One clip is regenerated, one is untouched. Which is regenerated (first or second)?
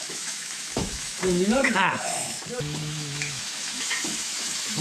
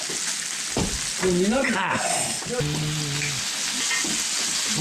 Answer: first